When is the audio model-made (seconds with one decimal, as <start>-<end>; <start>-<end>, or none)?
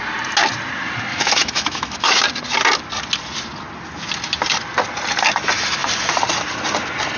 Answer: 1.1-2.2